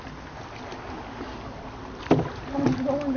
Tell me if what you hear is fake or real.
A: real